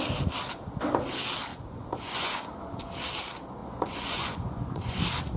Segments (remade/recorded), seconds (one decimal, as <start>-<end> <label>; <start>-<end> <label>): 0.0-1.5 recorded; 1.5-2.9 remade; 2.9-3.6 recorded; 3.6-5.0 remade; 5.0-5.4 recorded